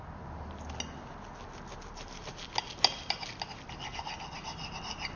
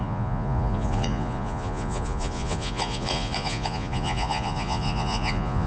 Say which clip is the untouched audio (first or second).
first